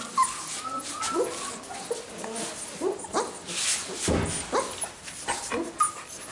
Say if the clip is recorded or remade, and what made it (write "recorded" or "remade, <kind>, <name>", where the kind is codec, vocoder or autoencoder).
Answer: recorded